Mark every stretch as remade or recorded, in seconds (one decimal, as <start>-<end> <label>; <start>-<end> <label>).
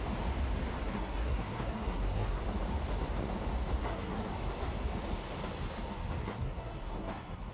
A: 0.0-0.8 recorded; 0.8-2.4 remade; 2.4-3.8 recorded; 3.8-4.3 remade; 4.3-6.2 recorded; 6.2-7.5 remade